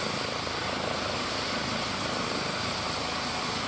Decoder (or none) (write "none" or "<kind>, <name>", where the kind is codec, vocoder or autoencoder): none